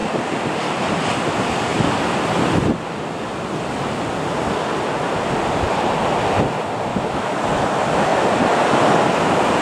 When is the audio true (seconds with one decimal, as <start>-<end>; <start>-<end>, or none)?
0.0-6.9; 7.4-9.6